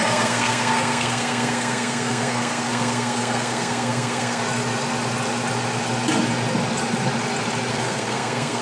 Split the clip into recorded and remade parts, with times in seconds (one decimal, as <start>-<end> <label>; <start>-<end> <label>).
0.0-4.4 remade; 4.4-7.7 recorded; 7.7-8.6 remade